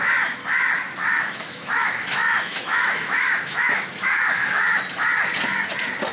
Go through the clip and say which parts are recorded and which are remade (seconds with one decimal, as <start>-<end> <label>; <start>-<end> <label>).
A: 0.0-1.1 recorded; 1.1-4.8 remade; 4.8-6.1 recorded